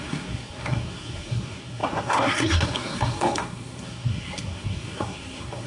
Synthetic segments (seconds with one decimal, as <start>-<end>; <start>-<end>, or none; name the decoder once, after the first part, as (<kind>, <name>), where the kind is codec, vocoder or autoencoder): 0.0-5.7 (codec, SNAC)